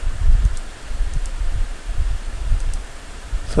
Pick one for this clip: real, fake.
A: fake